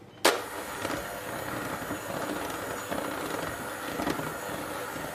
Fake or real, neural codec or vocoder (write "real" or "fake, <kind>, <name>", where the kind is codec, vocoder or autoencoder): real